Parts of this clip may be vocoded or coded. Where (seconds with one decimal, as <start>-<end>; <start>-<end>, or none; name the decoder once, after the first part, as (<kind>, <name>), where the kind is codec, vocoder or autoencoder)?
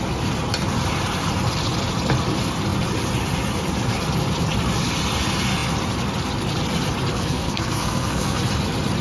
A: 7.1-8.4 (codec, SNAC)